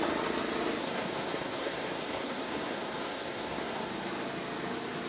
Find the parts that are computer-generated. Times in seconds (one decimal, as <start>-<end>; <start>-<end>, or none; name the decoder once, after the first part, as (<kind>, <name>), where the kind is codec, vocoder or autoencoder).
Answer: 0.8-3.9 (codec, SNAC)